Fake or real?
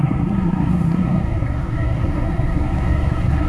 fake